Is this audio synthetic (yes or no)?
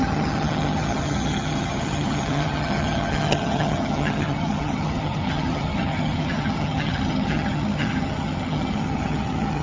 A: yes